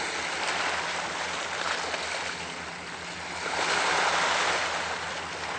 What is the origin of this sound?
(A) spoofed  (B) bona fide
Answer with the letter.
B